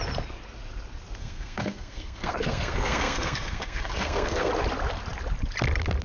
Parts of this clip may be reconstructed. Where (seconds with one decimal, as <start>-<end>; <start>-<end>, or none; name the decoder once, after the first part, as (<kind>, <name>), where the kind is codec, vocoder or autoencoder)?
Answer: 1.2-4.5 (codec, SNAC)